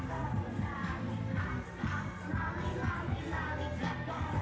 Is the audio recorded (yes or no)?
yes